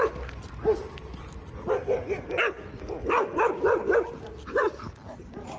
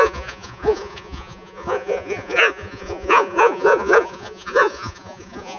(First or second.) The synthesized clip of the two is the second